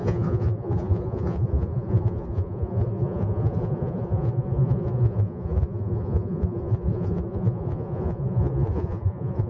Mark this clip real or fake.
fake